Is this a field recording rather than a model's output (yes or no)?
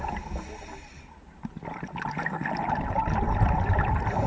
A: yes